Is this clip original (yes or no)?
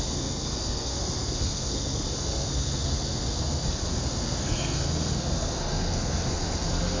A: no